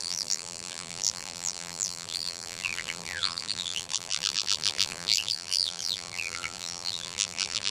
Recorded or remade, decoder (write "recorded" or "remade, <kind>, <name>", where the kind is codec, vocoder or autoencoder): remade, vocoder, BigVGAN v2